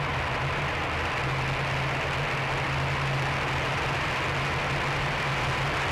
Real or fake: real